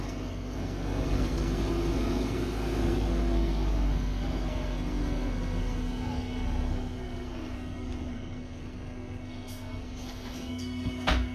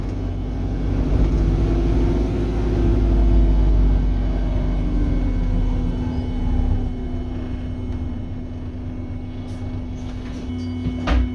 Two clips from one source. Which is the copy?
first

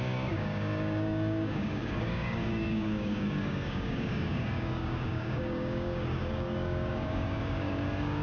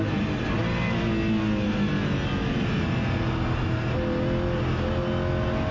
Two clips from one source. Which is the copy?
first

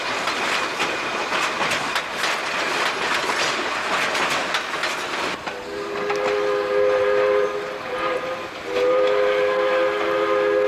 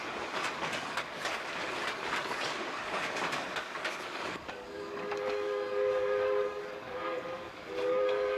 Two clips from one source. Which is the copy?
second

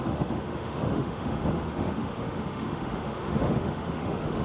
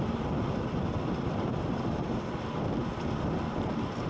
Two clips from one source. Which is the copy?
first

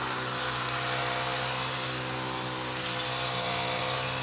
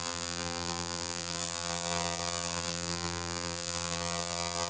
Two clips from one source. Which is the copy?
second